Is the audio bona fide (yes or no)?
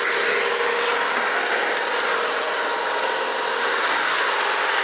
yes